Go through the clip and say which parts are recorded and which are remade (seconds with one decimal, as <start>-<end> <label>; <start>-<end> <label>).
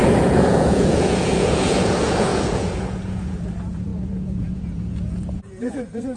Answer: 0.0-6.2 remade